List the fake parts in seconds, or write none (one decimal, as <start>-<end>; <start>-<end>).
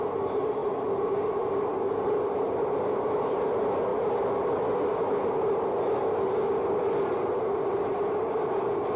none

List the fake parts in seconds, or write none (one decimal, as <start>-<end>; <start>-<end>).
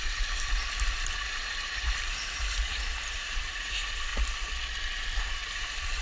0.0-4.1; 5.2-6.0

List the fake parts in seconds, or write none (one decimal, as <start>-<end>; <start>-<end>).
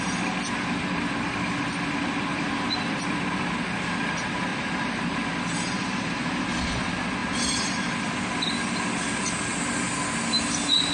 2.3-3.4; 4.5-6.1; 7.2-8.5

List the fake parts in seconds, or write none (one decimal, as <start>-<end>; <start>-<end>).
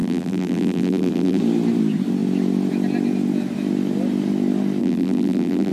0.0-1.4; 4.8-5.7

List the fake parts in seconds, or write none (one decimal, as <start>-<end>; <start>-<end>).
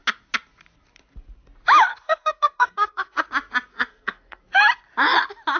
1.9-3.3; 3.7-4.4